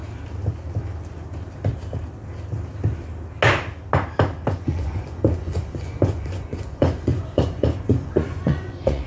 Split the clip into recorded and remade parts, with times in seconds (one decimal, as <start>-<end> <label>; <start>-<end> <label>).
0.0-4.5 recorded; 4.5-9.1 remade